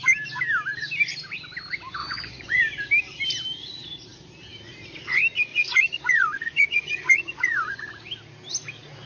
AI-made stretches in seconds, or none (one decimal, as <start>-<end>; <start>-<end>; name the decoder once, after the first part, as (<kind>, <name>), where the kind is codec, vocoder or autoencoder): 2.0-2.6 (vocoder, Vocos); 5.5-7.9